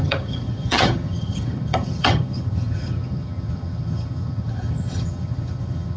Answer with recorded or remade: remade